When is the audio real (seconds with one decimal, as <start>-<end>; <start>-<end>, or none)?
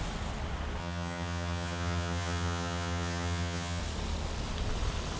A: 0.0-0.8; 3.8-5.2